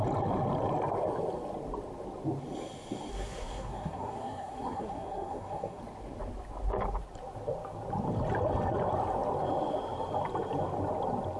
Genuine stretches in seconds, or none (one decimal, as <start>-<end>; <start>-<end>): 0.0-3.1; 5.8-11.4

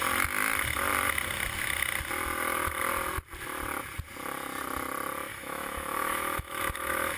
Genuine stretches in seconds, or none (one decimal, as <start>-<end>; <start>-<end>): 0.0-5.3

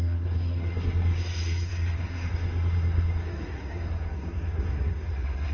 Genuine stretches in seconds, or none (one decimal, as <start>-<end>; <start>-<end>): none

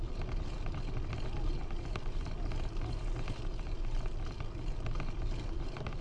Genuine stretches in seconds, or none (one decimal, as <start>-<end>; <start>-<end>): 0.0-6.0